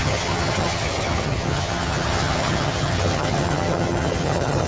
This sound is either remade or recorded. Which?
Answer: remade